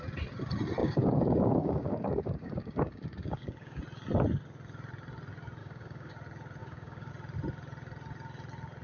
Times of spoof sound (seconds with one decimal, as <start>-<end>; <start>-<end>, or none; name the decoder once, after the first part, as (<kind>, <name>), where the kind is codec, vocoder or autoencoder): 0.8-3.8 (codec, DAC); 5.6-6.1; 6.6-7.1